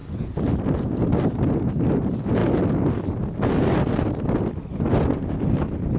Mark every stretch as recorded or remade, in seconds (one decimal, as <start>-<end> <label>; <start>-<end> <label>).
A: 0.0-6.0 recorded